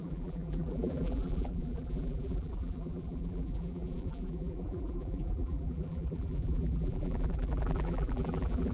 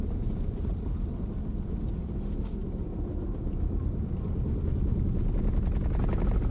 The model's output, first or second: first